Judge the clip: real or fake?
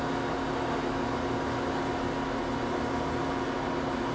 real